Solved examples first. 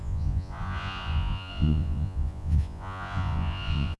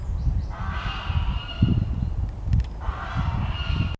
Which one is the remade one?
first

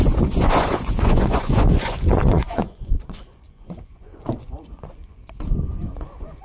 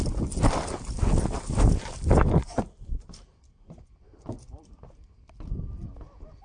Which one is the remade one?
first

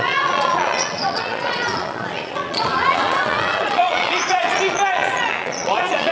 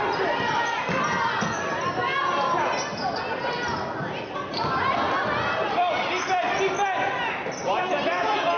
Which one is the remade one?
first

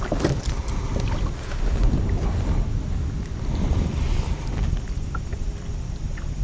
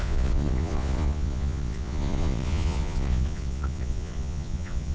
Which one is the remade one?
second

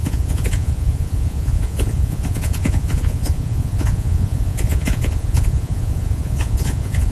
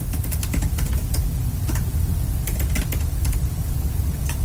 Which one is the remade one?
first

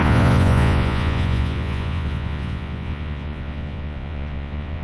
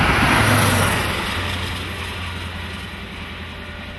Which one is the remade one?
first